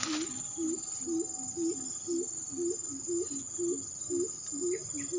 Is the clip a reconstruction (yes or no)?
no